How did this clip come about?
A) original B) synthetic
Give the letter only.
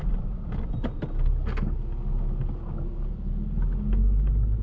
A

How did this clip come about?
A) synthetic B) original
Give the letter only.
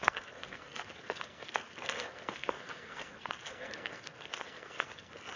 A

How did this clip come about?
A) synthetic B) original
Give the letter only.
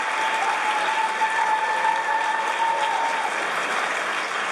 B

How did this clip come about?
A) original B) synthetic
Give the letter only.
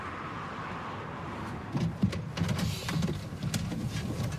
A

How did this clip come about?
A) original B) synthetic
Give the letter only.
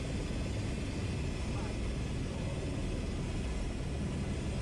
A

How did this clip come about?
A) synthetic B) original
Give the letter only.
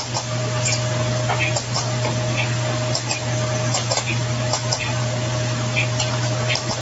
A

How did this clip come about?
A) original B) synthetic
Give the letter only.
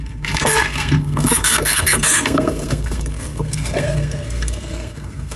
B